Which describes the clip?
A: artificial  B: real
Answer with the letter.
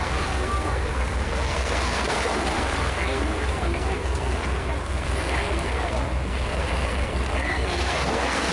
A